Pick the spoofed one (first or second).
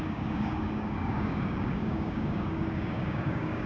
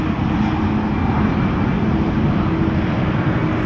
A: first